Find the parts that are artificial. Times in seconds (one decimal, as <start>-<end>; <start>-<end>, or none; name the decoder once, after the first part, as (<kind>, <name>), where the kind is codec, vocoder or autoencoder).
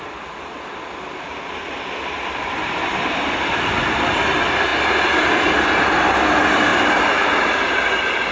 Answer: none